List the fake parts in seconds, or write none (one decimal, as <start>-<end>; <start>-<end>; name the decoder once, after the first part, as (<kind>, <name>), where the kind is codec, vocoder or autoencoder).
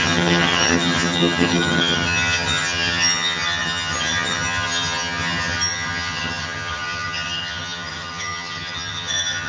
0.0-9.5 (vocoder, HiFi-GAN)